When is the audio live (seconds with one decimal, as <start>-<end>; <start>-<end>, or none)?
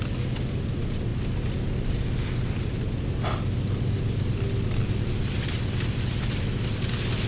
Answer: 0.0-7.3